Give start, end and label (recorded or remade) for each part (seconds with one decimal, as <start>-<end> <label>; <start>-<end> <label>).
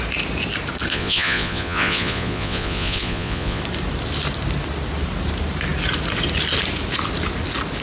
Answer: 0.0-0.9 recorded; 0.9-3.6 remade; 3.6-7.8 recorded